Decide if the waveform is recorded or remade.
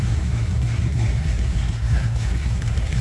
remade